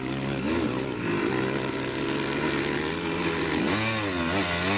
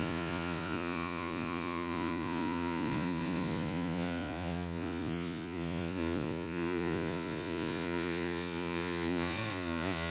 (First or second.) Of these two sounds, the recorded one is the first